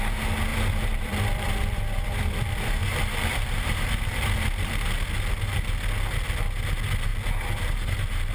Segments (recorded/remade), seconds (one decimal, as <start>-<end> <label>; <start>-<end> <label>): 0.0-0.5 recorded; 0.5-4.9 remade; 4.9-8.3 recorded